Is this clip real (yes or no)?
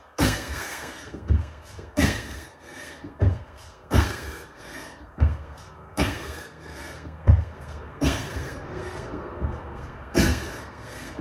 no